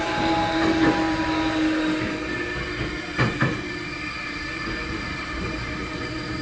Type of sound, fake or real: real